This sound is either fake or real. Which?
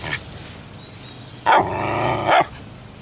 real